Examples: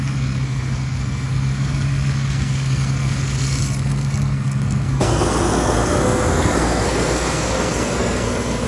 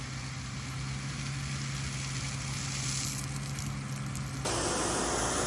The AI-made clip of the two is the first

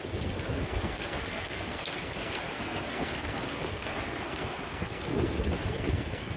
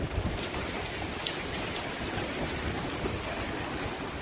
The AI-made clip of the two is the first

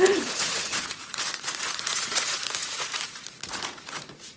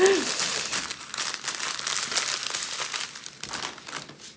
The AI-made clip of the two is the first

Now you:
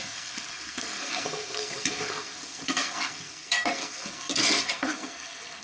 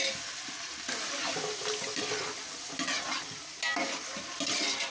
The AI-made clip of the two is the first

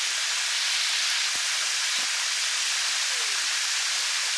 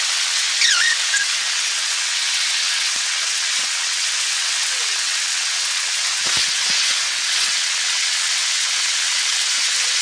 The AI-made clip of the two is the second